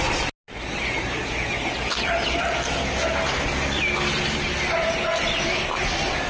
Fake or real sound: real